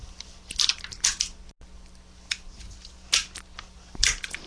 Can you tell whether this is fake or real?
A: real